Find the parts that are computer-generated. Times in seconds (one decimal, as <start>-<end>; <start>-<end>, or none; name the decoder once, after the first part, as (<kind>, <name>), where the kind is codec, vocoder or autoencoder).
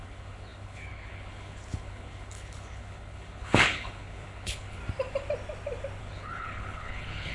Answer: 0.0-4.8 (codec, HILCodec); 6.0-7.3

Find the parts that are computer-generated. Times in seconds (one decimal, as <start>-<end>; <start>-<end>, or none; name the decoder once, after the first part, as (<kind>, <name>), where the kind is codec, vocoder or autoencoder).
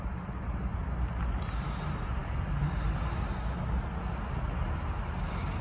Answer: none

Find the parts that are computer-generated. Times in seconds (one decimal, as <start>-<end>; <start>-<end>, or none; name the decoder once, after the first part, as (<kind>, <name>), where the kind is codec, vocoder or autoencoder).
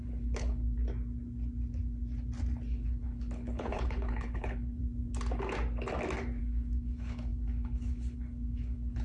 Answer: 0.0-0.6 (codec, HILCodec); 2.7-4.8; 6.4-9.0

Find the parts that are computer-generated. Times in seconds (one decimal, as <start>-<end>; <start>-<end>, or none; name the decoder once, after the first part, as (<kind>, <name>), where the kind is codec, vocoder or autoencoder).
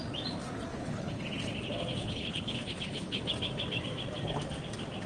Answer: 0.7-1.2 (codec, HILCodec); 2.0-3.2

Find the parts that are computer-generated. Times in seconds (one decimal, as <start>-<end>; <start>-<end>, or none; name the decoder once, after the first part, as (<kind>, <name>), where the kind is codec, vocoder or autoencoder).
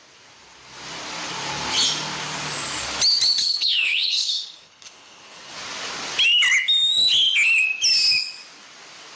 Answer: 3.4-5.5 (codec, HILCodec)